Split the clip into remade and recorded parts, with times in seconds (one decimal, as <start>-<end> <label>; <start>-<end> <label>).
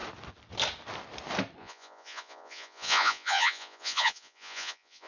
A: 0.0-1.6 recorded; 1.6-5.1 remade